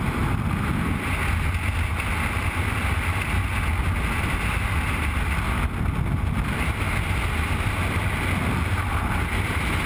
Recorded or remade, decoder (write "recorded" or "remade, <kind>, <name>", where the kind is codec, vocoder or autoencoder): recorded